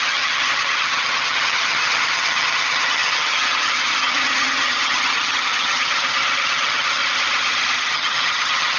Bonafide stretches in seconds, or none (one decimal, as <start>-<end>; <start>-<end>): 7.0-7.8